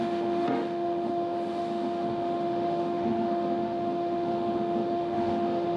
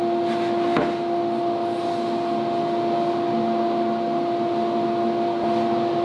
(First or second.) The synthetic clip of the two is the first